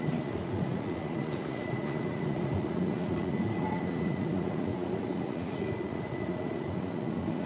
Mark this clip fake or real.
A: fake